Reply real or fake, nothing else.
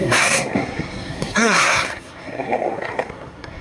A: fake